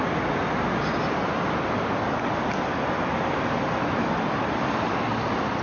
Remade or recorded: recorded